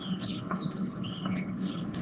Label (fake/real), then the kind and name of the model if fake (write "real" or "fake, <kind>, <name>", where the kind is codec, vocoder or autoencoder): fake, codec, HILCodec